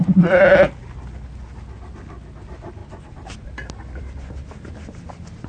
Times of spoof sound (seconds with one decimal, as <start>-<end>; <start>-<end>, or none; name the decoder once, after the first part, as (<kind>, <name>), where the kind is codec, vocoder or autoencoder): none